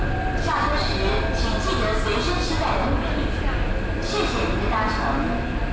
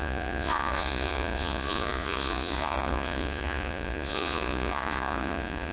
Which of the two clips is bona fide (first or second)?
first